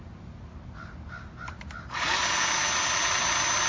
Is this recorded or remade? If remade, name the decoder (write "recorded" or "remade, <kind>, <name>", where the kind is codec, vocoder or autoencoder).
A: recorded